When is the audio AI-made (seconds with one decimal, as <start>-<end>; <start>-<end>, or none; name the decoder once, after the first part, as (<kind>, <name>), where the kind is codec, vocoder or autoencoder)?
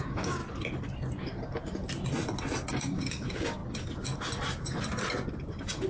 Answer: 0.0-0.4 (codec, DAC); 2.7-3.6